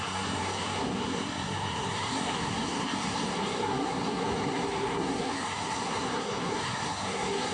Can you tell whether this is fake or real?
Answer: fake